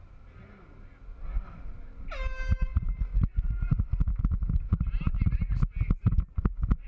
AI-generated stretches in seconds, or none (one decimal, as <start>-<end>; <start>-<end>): none